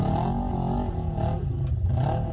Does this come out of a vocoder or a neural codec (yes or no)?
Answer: no